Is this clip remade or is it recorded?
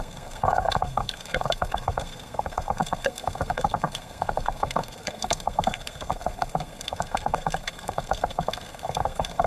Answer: remade